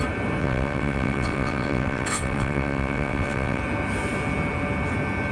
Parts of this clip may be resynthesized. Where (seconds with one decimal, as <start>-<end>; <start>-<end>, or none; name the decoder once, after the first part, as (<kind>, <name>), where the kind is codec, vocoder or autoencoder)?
0.4-3.6 (vocoder, WaveNeXt)

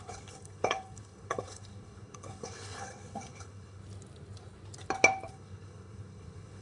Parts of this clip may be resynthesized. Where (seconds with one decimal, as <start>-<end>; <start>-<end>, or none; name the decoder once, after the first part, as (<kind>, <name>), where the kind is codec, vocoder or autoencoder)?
0.0-3.8 (codec, HILCodec); 5.3-6.6

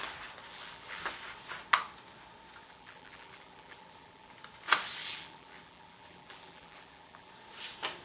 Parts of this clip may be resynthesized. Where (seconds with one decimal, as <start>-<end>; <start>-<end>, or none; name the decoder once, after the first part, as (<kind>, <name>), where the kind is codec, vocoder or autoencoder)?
0.5-1.0 (vocoder, BigVGAN v2); 2.6-4.3; 5.0-7.3